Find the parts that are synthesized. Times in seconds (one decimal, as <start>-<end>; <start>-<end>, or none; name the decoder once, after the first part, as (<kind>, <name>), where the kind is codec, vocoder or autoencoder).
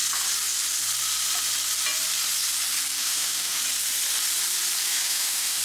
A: 3.0-3.6 (autoencoder, DAC-VAE); 4.9-5.6